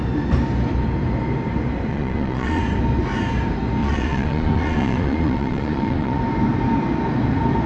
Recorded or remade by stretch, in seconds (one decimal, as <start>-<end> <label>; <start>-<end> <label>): 0.0-1.9 recorded; 1.9-2.6 remade; 2.6-3.8 recorded; 3.8-6.2 remade; 6.2-7.7 recorded